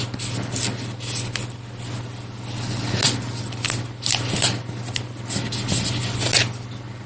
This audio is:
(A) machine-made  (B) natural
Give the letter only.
B